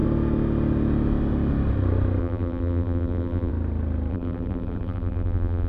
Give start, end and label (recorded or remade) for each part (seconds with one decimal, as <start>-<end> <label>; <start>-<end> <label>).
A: 0.0-2.2 recorded; 2.2-3.5 remade; 3.5-4.1 recorded; 4.1-5.7 remade